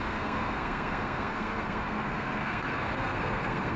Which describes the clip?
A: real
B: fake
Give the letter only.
B